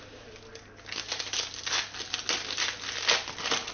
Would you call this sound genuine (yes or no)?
yes